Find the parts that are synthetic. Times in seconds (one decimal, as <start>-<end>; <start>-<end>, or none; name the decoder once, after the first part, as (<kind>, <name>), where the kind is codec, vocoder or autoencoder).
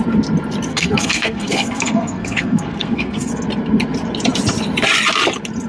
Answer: 0.7-3.3 (codec, SNAC)